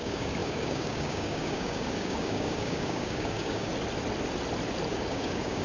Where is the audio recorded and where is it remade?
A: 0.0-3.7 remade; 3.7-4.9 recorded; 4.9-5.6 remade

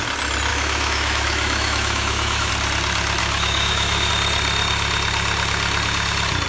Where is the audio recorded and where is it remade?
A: 0.0-0.5 recorded; 0.5-2.5 remade; 2.5-3.2 recorded; 3.2-4.1 remade; 4.1-6.5 recorded

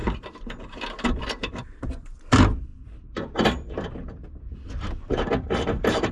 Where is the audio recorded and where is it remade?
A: 0.0-6.1 remade

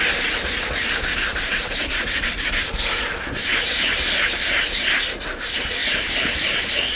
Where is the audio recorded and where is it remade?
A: 0.0-1.3 recorded; 1.3-2.3 remade; 2.3-5.8 recorded; 5.8-7.0 remade

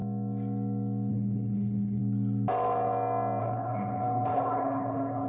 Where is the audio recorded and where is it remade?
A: 0.0-1.1 recorded; 1.1-2.0 remade; 2.0-3.4 recorded; 3.4-5.3 remade

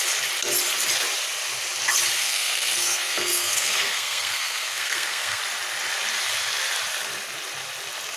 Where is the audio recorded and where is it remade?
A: 0.0-2.2 recorded; 2.2-5.4 remade; 5.4-8.2 recorded

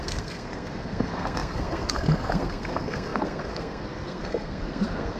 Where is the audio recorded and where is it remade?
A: 0.0-5.2 remade